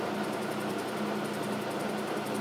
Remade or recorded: recorded